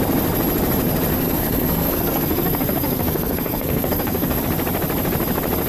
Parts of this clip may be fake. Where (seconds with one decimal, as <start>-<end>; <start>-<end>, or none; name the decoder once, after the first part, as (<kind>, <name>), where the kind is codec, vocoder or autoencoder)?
1.1-4.4 (codec, SNAC)